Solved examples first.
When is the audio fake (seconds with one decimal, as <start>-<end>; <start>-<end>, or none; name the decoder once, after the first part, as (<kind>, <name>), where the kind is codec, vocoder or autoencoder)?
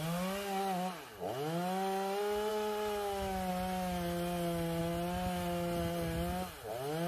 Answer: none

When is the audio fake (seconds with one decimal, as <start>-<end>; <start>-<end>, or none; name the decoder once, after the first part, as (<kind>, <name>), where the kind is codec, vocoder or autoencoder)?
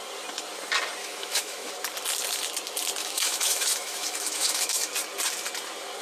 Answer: 1.0-1.7 (autoencoder, DAC-VAE); 3.0-4.9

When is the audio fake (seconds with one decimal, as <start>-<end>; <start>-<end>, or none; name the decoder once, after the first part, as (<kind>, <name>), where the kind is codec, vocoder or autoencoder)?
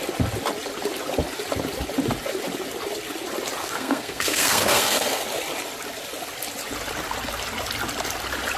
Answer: 3.6-5.2 (codec, SNAC)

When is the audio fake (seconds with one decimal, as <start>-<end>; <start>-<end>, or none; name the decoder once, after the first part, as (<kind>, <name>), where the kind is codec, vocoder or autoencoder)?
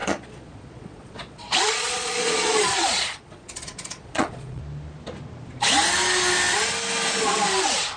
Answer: 0.0-4.6 (vocoder, Vocos)